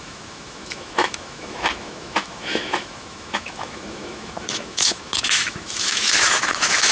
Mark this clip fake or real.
fake